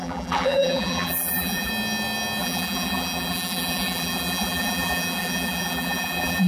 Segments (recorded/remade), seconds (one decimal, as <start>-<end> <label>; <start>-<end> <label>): 0.0-1.7 remade; 1.7-2.4 recorded; 2.4-6.5 remade